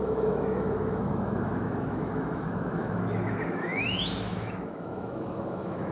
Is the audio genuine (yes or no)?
no